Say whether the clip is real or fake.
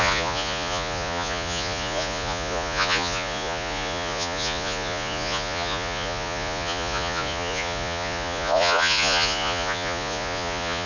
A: fake